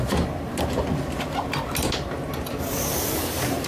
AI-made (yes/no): no